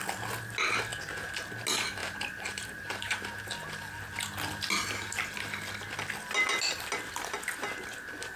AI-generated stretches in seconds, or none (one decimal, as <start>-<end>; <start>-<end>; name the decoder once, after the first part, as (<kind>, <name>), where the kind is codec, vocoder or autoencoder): 2.0-3.5 (vocoder, BigVGAN v2)